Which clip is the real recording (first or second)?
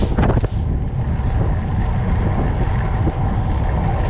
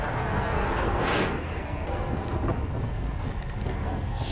first